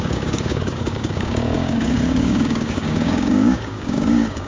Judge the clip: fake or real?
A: fake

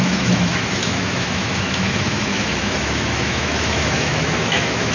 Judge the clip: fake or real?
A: fake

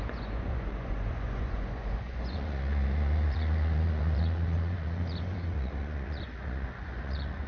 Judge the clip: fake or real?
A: fake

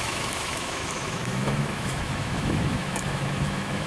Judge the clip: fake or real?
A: fake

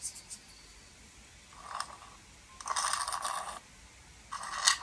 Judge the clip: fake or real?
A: real